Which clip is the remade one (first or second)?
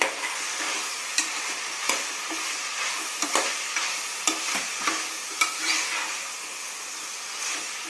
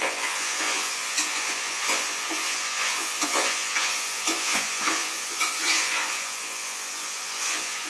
second